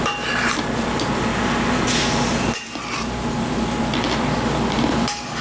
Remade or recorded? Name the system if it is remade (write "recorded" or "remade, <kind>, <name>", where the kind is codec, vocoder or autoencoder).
recorded